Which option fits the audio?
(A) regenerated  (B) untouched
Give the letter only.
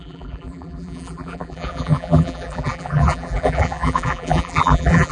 A